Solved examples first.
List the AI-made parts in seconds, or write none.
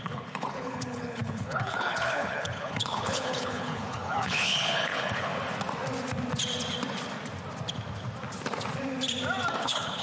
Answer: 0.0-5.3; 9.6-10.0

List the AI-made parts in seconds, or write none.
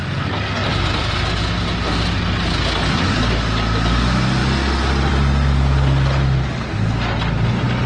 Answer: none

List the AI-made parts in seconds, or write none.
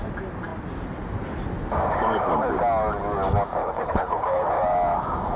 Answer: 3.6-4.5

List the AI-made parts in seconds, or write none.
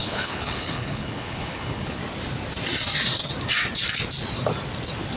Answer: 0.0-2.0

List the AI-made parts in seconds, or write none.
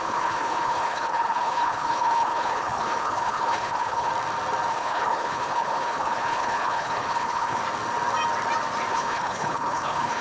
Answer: 0.0-4.1; 4.7-7.6; 8.9-10.2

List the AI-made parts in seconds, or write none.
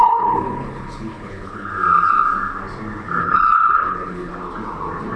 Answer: 0.0-1.7; 3.2-4.3